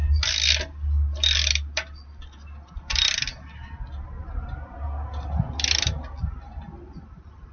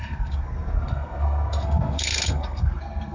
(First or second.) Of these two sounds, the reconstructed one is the second